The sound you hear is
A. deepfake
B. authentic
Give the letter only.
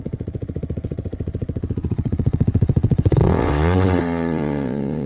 A